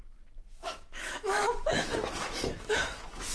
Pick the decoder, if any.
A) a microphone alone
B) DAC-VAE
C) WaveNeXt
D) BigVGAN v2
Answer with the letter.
B